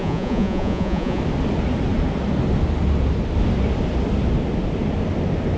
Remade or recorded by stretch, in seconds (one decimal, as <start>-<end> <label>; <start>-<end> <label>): 0.0-1.2 remade; 1.2-5.6 recorded